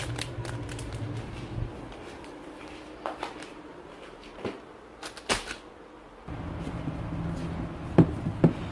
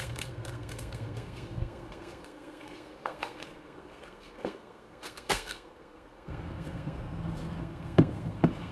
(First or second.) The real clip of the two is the first